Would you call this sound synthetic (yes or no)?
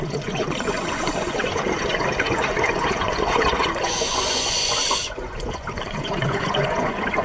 yes